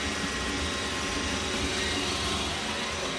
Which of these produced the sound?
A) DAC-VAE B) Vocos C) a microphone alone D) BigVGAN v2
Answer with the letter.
C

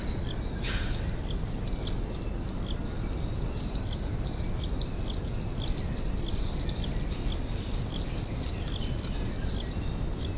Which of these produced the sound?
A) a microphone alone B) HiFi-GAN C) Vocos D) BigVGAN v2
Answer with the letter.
A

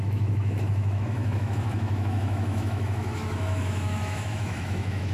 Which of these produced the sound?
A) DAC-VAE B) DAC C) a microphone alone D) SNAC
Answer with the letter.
A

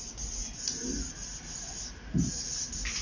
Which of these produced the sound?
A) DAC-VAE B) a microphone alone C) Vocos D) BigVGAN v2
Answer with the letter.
B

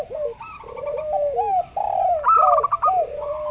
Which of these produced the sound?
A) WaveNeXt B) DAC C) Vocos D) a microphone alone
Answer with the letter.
D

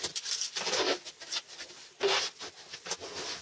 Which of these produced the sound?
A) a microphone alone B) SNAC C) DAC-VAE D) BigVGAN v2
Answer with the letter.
A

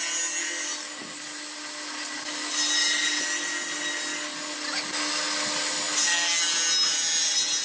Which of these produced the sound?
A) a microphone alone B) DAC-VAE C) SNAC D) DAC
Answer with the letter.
A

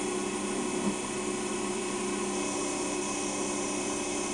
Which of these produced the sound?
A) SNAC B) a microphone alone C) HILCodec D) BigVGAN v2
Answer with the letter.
B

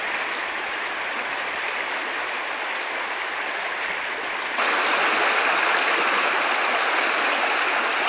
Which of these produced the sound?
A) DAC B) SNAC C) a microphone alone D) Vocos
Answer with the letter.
C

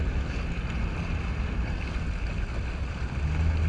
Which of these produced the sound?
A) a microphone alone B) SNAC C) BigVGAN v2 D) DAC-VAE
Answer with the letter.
A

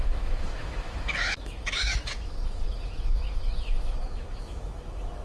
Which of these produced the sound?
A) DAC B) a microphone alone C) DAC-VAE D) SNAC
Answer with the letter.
C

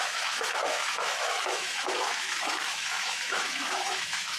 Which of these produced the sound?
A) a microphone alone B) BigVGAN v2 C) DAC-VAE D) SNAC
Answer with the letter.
C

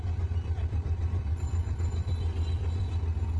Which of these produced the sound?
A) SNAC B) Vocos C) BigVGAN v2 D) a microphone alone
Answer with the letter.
C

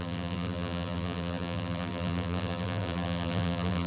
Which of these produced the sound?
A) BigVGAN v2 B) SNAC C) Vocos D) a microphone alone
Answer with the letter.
A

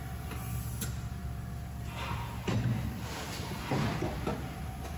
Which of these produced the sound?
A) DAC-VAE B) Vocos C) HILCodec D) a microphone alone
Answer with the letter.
D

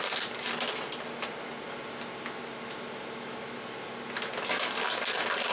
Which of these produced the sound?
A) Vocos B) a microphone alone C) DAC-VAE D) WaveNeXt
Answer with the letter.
B